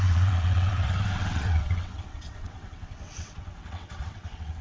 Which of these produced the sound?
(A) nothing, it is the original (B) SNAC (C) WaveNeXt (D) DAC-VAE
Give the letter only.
C